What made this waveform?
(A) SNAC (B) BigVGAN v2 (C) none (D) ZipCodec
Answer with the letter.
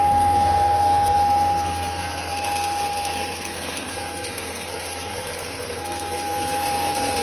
A